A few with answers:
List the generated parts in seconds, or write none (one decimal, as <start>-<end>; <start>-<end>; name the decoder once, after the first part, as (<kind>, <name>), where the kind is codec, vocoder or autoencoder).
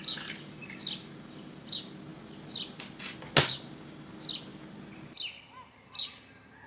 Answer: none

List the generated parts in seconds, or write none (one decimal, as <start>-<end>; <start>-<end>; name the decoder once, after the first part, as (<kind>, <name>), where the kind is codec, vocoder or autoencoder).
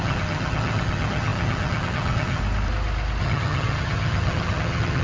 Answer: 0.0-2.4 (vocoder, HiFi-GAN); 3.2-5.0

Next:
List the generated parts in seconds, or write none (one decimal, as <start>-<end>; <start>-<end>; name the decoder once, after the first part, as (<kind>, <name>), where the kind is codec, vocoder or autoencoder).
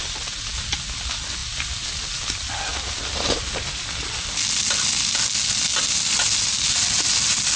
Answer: none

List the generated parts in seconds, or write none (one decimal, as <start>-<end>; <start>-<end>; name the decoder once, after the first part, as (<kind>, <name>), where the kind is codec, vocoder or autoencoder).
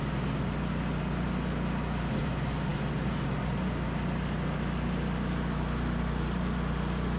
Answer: none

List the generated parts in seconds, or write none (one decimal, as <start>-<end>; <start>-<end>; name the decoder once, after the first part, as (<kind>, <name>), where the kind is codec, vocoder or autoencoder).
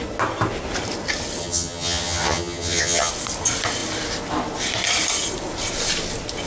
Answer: 1.4-3.1 (vocoder, HiFi-GAN)